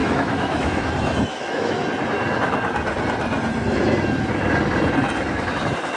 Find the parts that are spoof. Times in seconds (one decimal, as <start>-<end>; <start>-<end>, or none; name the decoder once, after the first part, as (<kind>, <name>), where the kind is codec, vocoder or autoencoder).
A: 0.0-0.9 (autoencoder, DAC-VAE); 1.3-1.8